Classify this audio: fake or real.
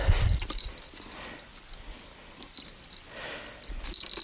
real